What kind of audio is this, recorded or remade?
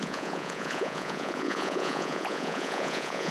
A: remade